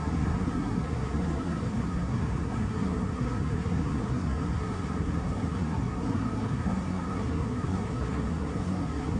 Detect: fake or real fake